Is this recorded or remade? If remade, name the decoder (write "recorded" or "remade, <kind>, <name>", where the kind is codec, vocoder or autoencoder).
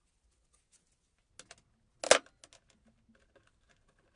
recorded